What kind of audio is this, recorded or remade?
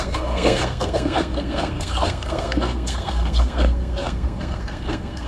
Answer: remade